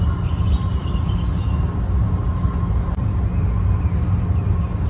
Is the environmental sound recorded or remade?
recorded